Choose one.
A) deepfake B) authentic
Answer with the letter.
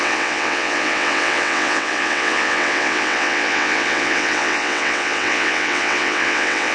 A